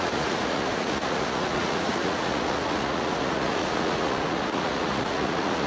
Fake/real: fake